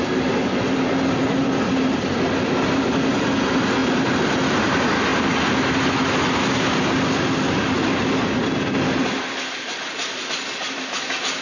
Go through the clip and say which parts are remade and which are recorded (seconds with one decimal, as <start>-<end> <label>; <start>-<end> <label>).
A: 0.0-11.4 recorded